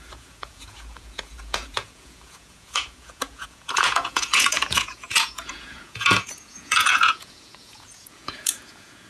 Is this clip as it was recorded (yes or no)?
no